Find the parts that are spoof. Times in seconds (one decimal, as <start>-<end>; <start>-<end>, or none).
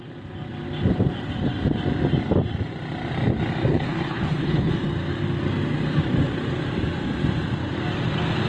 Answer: 3.7-4.7